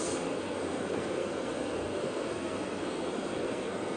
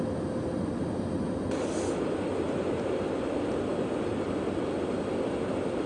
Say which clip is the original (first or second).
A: second